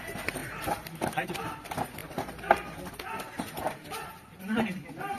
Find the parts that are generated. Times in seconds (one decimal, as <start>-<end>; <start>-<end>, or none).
0.0-0.4; 1.1-5.2